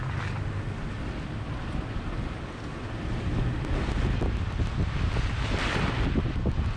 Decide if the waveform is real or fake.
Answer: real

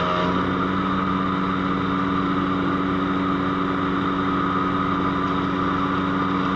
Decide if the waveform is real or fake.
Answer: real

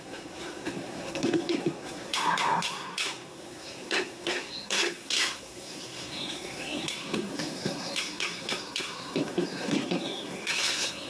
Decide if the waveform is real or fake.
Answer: fake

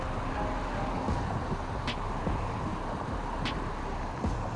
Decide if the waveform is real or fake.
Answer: real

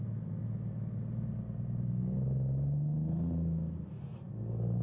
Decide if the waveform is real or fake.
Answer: real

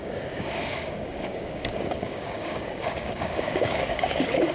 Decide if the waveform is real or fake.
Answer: fake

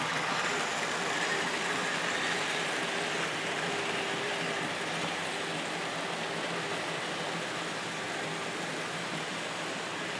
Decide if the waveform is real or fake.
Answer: real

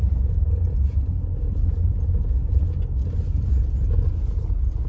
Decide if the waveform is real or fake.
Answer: real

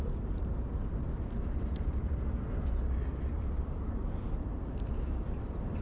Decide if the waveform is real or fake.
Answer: real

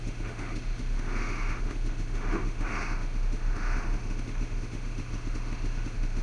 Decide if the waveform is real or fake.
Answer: fake